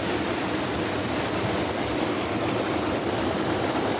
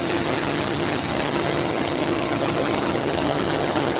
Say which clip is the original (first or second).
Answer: first